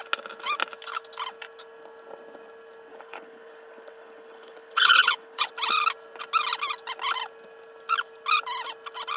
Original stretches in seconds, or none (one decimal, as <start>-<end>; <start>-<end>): 0.0-2.9; 5.5-9.2